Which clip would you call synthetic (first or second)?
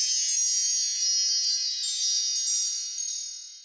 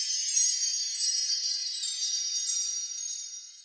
second